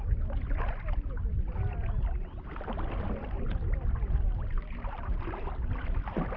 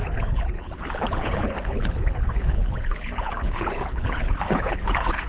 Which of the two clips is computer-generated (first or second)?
second